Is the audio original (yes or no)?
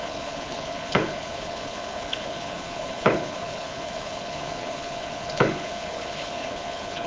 no